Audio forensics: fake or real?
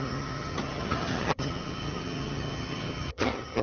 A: fake